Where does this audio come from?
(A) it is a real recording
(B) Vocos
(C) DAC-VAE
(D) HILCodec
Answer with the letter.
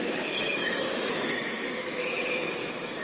C